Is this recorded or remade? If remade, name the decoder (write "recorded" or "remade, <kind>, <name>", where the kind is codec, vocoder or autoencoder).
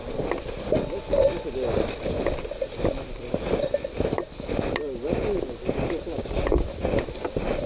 recorded